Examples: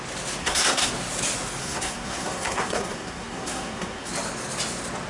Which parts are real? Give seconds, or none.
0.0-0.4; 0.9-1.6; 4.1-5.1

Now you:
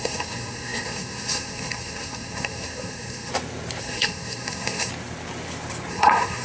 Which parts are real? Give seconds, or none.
3.3-3.8; 4.9-5.9

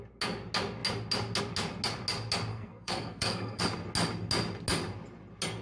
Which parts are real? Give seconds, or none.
0.0-2.5; 3.6-5.6

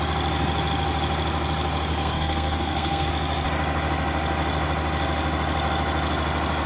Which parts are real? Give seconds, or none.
0.0-1.9; 3.1-6.7

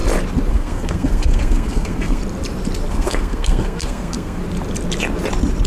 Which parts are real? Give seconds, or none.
0.0-0.5; 2.2-2.9; 4.4-5.7

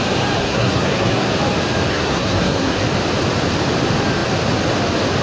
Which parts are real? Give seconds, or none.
0.0-0.4; 1.3-1.9; 2.8-5.2

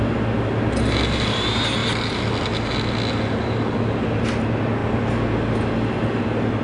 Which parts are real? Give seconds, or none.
0.0-6.6